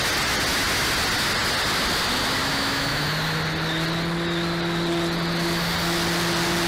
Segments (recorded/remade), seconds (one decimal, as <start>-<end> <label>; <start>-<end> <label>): 0.0-2.4 recorded; 2.4-3.1 remade; 3.1-6.7 recorded